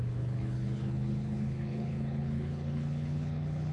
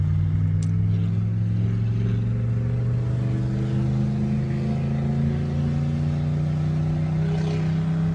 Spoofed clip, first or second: first